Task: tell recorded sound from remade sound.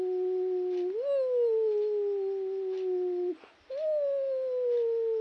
recorded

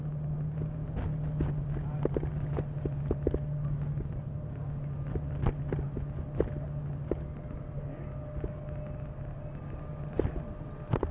recorded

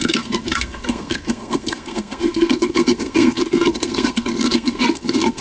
remade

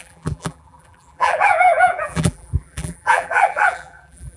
remade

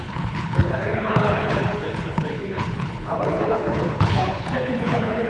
remade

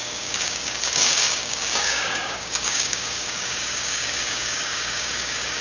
remade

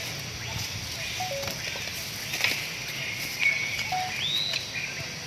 recorded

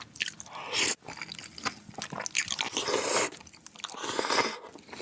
recorded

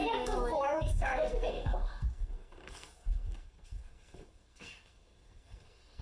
remade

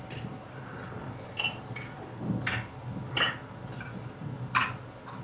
recorded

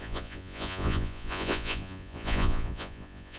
remade